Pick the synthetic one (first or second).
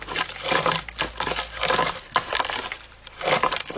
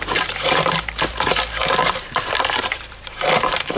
second